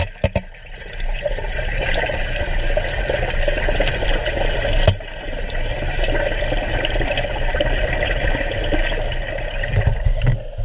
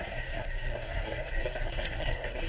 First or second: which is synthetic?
second